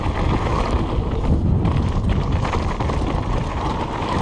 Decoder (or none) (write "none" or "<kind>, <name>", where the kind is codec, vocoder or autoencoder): none